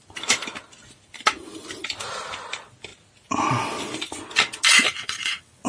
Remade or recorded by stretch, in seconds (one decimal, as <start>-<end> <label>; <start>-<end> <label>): 0.0-4.9 recorded; 4.9-5.7 remade

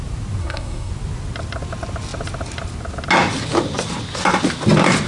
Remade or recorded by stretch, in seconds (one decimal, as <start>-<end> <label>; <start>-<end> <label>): 0.0-0.4 recorded; 0.4-0.9 remade; 0.9-5.1 recorded

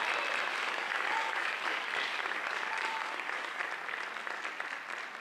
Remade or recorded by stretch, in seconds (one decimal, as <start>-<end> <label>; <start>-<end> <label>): 0.0-0.5 recorded; 0.5-3.6 remade; 3.6-5.2 recorded